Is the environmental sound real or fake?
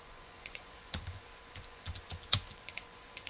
fake